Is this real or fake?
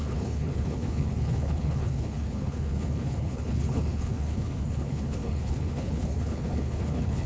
fake